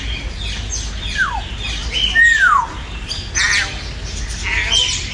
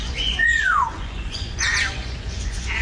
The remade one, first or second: second